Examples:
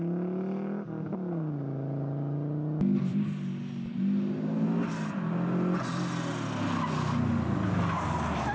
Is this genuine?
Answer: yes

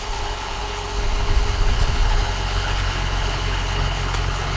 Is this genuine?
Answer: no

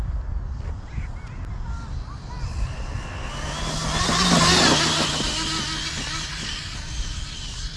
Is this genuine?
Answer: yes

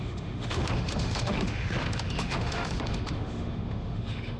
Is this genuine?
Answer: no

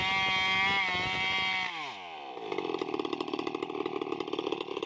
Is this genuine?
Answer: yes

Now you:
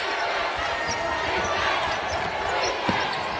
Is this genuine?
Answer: yes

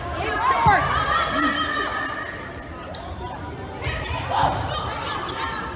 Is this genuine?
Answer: yes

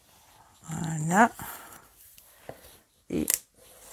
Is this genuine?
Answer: yes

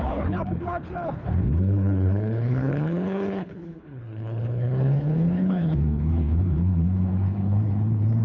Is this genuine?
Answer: no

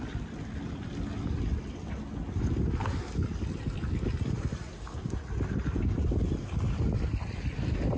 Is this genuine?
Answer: yes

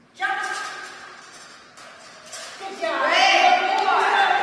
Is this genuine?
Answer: yes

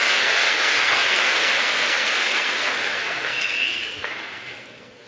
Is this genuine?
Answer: no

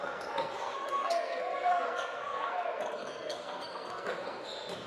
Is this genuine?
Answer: no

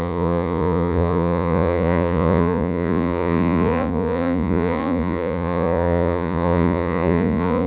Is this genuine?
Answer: no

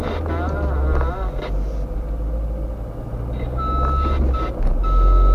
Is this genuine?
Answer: yes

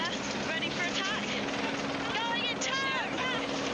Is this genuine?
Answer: yes